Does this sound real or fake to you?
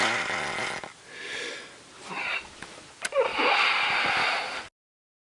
real